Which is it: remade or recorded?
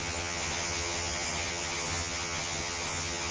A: remade